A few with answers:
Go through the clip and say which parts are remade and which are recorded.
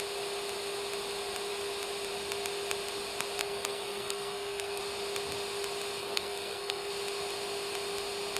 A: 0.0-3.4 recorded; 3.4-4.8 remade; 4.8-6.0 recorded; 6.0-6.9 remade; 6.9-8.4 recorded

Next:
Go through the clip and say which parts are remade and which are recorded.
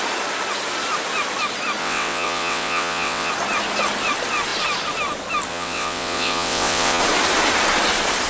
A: 0.0-1.8 recorded; 1.8-3.3 remade; 3.3-5.5 recorded; 5.5-7.0 remade; 7.0-8.3 recorded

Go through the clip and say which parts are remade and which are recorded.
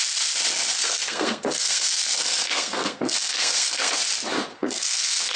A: 0.0-0.7 recorded; 0.7-3.9 remade; 3.9-4.5 recorded; 4.5-5.4 remade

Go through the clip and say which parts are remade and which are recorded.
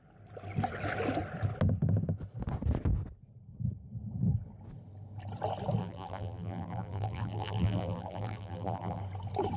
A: 0.0-5.8 recorded; 5.8-9.0 remade; 9.0-9.6 recorded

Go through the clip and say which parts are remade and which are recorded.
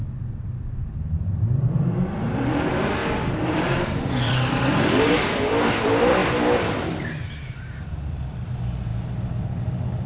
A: 0.0-0.9 recorded; 0.9-8.9 remade; 8.9-9.6 recorded; 9.6-10.1 remade